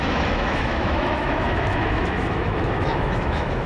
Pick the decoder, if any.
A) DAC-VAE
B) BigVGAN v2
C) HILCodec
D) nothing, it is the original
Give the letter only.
A